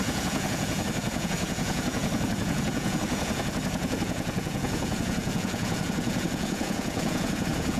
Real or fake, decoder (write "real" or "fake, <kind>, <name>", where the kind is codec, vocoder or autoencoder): fake, vocoder, Vocos